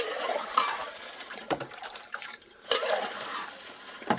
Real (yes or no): no